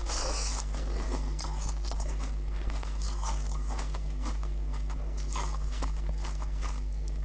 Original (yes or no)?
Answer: no